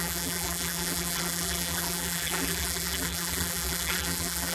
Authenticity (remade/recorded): remade